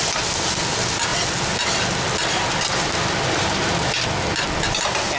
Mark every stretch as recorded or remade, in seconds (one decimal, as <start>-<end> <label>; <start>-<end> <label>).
0.0-5.2 recorded